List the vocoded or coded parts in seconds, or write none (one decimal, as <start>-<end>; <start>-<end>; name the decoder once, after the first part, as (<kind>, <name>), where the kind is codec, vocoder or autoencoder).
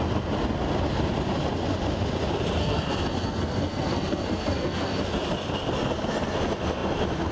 2.6-5.0 (codec, SNAC)